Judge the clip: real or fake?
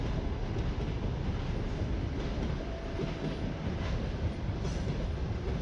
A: real